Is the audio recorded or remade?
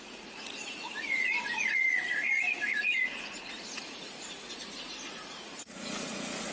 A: remade